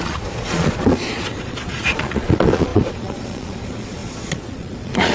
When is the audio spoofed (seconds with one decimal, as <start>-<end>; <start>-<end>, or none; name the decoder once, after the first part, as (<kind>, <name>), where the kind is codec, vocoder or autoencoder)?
0.0-5.1 (vocoder, Vocos)